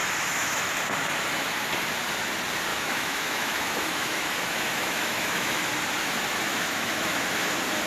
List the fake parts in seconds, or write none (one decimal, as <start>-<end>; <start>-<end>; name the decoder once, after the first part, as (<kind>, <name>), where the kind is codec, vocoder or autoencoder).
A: 0.0-0.7 (autoencoder, DAC-VAE); 2.7-5.6; 6.5-7.2